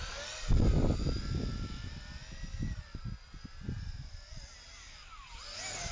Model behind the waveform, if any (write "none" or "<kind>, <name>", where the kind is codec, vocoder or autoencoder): none